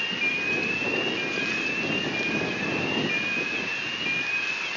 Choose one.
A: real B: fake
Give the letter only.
A